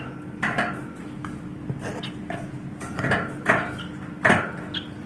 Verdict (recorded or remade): recorded